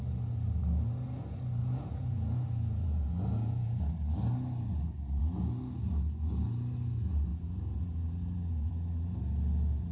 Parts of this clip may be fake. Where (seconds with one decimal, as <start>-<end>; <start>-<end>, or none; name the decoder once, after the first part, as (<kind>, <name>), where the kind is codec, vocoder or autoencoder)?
1.6-3.8 (vocoder, Vocos); 7.3-8.7